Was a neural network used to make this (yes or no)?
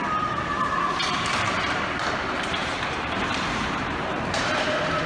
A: yes